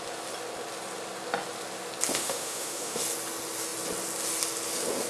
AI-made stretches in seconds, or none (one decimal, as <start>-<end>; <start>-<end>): 2.1-3.0